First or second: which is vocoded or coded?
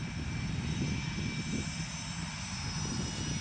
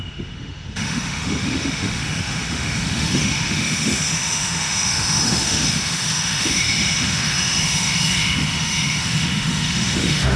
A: second